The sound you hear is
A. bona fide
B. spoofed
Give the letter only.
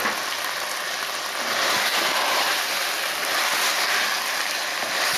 A